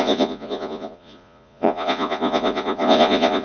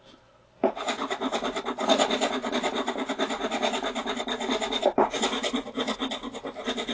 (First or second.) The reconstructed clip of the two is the first